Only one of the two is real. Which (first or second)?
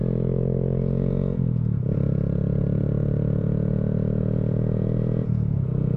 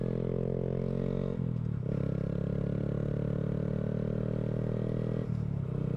second